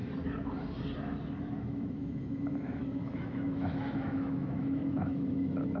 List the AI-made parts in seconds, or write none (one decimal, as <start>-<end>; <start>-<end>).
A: 1.4-5.8